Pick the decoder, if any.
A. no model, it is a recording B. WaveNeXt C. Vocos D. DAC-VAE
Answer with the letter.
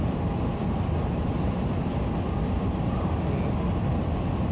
A